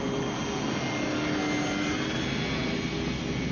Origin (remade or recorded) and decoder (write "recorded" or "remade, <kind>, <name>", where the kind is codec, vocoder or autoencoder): recorded